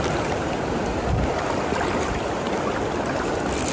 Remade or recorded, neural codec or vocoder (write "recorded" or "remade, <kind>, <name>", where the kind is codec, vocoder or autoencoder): recorded